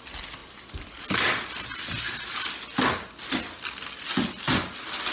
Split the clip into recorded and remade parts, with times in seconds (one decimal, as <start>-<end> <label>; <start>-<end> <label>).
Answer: 0.0-5.1 recorded